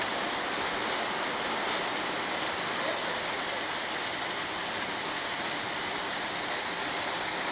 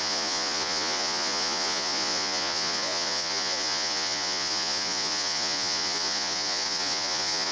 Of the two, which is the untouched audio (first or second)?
first